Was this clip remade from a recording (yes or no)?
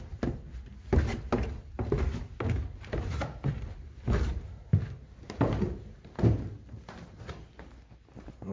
no